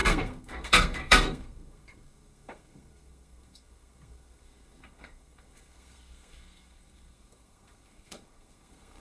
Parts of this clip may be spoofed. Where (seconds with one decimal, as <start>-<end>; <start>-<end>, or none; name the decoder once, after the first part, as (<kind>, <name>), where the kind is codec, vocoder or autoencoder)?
0.0-9.0 (codec, SNAC)